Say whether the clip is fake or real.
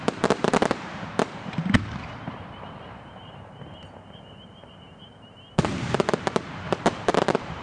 fake